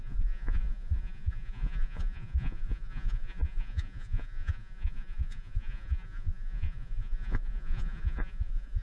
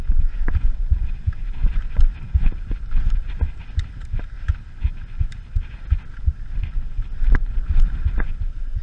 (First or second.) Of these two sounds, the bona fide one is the second